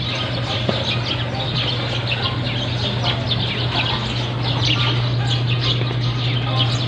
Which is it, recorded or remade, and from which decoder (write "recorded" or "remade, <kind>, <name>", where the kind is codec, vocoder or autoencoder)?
recorded